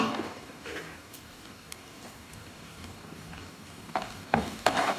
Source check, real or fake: fake